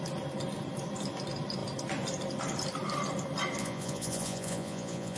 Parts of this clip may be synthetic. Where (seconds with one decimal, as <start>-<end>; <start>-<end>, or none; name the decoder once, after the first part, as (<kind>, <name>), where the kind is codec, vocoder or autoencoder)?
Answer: 3.6-5.2 (vocoder, Vocos)